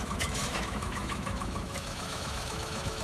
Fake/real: fake